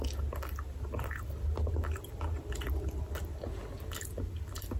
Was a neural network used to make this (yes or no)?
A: no